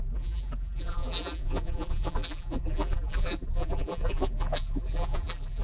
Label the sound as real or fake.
fake